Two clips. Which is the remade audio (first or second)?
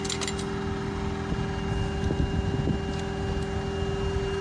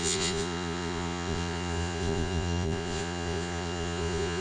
second